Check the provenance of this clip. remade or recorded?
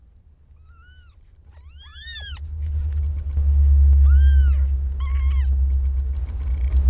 recorded